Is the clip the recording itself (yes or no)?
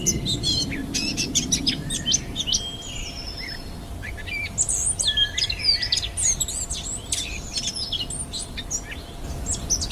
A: yes